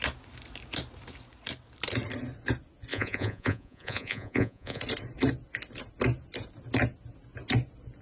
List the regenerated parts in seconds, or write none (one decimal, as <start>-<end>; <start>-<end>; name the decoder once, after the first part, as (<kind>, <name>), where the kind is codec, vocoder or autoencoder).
2.9-4.8 (vocoder, Vocos)